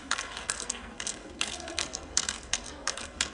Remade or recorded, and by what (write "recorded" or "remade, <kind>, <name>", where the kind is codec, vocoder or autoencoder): remade, codec, SNAC